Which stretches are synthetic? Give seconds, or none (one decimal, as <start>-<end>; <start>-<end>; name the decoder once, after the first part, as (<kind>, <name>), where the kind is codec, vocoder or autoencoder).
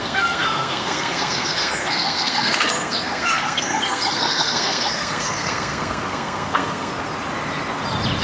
0.0-6.9 (codec, SNAC)